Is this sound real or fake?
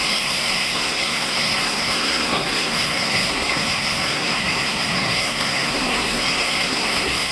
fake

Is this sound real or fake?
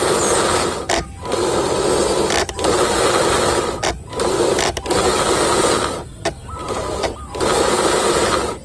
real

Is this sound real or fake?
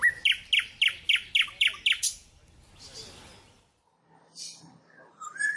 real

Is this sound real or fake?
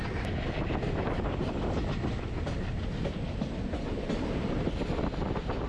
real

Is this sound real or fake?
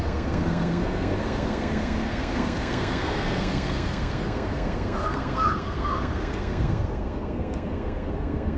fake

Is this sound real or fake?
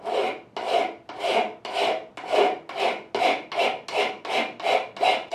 real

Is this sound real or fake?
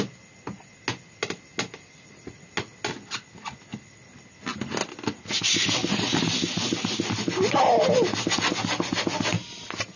real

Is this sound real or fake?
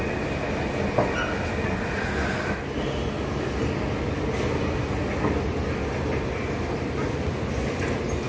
real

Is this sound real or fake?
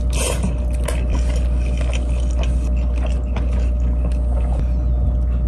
real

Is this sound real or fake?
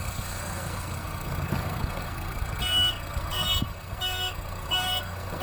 fake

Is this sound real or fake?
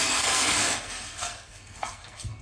fake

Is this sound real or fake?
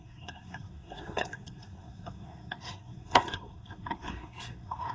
fake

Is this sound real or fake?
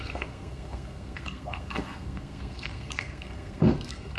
fake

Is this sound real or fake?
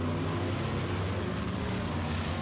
real